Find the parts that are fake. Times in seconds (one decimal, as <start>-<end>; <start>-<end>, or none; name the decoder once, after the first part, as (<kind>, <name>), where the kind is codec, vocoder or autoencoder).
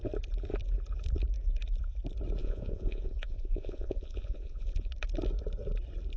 2.4-4.9 (vocoder, Vocos)